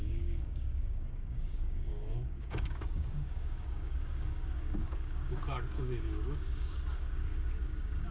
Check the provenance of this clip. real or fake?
fake